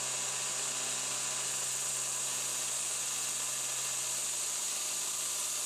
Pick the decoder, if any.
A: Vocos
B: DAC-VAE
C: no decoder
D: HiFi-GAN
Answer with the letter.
C